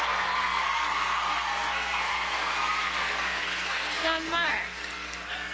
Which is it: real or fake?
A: fake